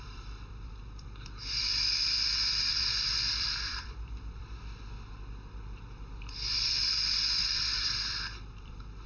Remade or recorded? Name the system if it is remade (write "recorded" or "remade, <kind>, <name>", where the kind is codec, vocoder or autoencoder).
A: remade, vocoder, BigVGAN v2